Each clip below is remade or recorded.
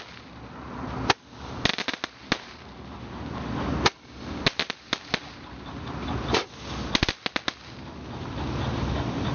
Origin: recorded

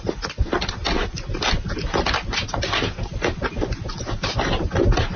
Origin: recorded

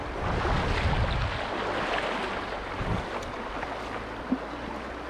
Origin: recorded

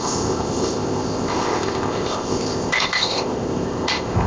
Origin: remade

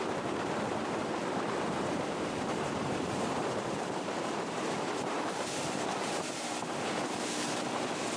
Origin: remade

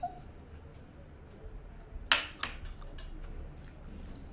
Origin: recorded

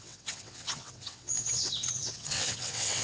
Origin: remade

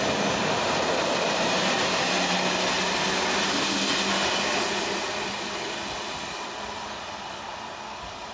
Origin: recorded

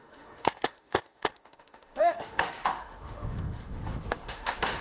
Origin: remade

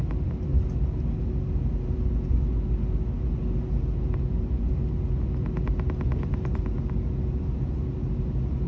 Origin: recorded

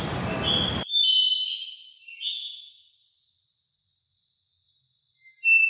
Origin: recorded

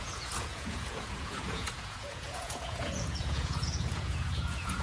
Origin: remade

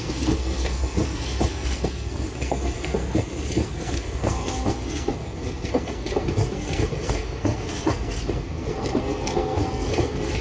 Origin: remade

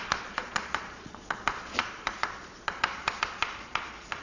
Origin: remade